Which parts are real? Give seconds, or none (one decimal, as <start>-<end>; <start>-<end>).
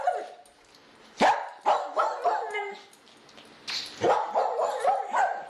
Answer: 0.0-5.5